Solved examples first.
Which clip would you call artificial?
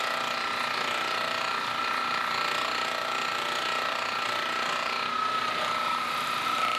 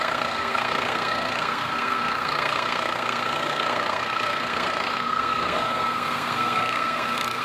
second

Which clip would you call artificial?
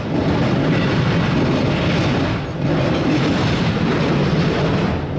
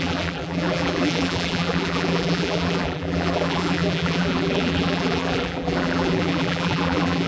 second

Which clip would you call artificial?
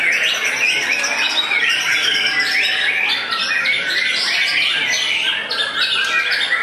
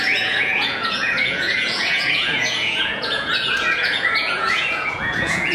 second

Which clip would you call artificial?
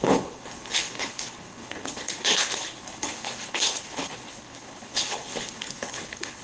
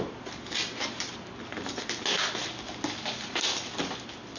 first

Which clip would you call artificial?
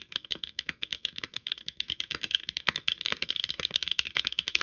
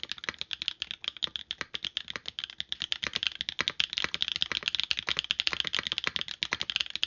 first